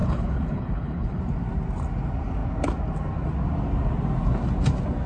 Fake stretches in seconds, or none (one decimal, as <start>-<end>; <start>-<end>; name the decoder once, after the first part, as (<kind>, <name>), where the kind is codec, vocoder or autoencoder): 0.0-1.2 (codec, HILCodec)